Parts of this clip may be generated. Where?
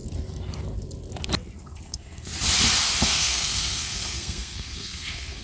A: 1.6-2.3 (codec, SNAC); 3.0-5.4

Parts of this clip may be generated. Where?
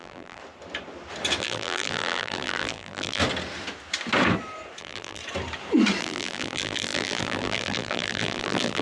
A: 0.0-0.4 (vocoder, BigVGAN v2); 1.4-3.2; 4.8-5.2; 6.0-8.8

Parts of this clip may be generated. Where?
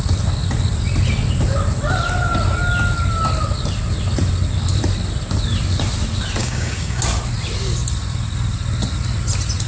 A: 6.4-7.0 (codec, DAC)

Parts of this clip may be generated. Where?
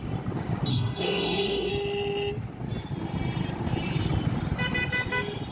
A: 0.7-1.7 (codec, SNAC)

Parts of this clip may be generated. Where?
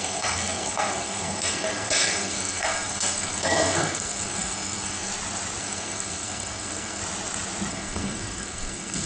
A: 0.0-5.1 (codec, SNAC); 5.6-7.0; 7.7-9.1